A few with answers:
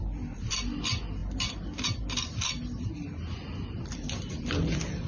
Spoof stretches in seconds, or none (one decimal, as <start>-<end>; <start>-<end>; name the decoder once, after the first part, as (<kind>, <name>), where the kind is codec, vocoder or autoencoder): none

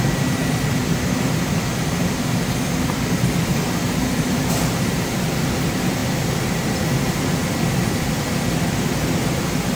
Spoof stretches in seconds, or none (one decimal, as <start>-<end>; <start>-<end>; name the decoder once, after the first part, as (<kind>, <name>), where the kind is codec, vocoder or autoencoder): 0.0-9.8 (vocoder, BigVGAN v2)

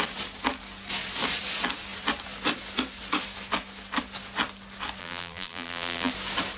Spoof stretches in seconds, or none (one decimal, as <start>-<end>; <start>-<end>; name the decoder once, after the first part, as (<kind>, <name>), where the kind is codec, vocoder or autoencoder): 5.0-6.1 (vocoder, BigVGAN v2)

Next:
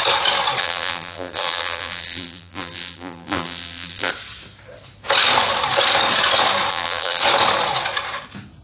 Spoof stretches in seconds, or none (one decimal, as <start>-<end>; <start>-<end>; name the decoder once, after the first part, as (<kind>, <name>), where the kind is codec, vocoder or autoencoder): 0.6-4.1 (vocoder, BigVGAN v2); 6.7-7.2

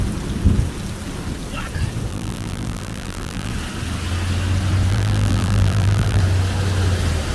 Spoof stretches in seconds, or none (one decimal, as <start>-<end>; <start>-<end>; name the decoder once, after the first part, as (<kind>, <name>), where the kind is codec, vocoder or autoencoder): 2.1-3.5 (vocoder, BigVGAN v2); 4.9-6.2